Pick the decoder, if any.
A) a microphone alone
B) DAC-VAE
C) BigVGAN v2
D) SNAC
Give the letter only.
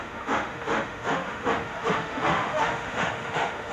B